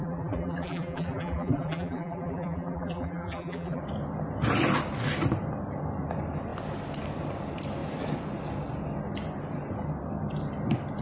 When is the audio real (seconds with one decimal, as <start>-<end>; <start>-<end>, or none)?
3.8-11.0